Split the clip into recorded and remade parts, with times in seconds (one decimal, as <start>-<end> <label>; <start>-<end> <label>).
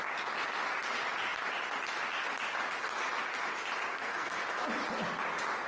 0.0-3.9 recorded; 3.9-4.4 remade; 4.4-5.7 recorded